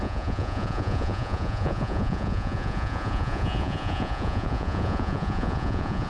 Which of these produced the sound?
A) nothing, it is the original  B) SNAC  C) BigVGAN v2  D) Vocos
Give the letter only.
D